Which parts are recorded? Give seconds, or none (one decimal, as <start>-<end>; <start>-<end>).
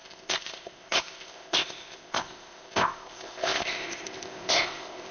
none